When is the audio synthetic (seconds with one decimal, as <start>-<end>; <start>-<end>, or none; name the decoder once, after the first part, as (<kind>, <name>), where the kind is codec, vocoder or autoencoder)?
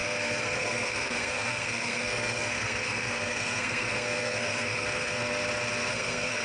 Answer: 0.0-5.2 (codec, SNAC); 5.9-6.4